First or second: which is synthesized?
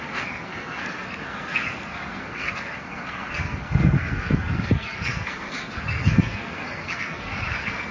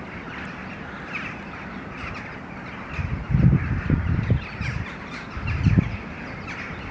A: first